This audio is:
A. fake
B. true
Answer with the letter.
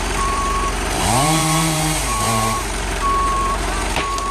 A